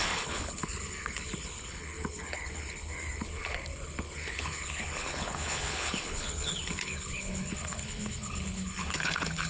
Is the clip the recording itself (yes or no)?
no